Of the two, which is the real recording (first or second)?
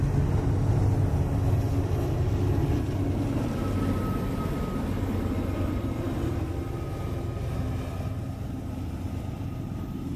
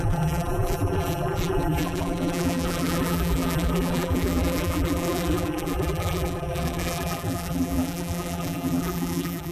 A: first